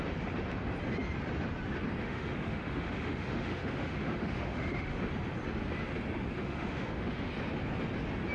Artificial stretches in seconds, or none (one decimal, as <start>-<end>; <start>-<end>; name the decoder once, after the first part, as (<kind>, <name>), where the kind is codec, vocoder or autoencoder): 2.0-5.0 (autoencoder, DAC-VAE); 6.4-7.3